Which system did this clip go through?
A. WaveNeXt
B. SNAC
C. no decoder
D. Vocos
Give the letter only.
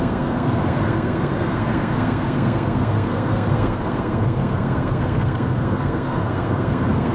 B